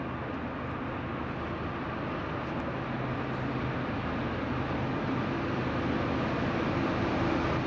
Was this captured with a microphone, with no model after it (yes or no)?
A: yes